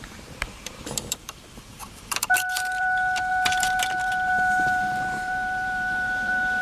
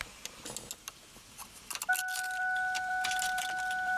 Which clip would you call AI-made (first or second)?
first